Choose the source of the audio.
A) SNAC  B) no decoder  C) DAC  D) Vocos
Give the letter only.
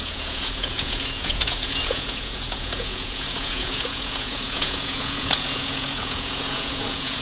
D